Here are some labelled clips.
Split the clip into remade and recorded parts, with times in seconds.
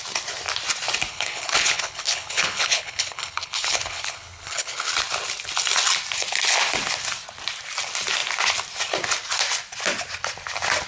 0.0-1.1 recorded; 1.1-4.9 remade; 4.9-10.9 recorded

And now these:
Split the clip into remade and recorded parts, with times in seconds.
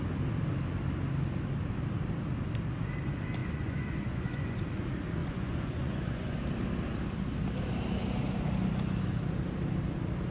0.0-3.4 recorded; 3.4-4.6 remade; 4.6-5.2 recorded; 5.2-6.4 remade; 6.4-10.3 recorded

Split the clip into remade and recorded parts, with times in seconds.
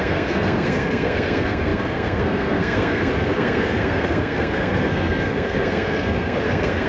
0.0-6.9 remade